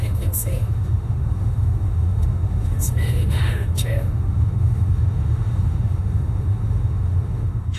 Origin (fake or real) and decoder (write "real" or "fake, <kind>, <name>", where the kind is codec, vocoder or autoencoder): fake, autoencoder, DAC-VAE